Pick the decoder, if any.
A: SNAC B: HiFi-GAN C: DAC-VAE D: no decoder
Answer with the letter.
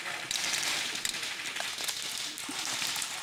D